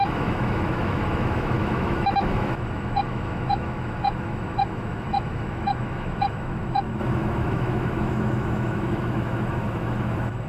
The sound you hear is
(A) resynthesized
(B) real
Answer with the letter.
A